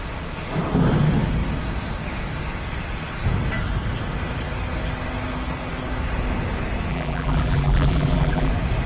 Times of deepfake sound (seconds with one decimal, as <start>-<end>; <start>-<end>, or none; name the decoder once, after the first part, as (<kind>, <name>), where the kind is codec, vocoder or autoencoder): 6.9-8.5 (vocoder, BigVGAN v2)